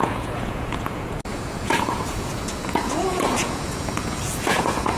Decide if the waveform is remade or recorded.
remade